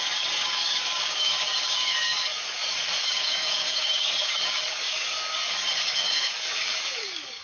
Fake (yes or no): yes